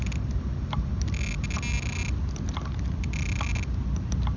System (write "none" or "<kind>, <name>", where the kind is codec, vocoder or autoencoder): none